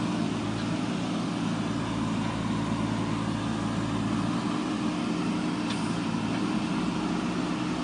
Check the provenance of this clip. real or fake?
real